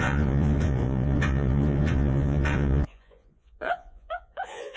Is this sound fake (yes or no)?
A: yes